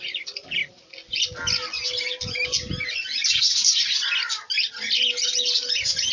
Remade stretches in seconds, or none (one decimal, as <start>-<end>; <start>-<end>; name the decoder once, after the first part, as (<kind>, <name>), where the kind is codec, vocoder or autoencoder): none